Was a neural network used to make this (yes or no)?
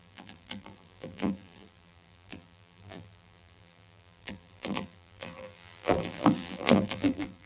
yes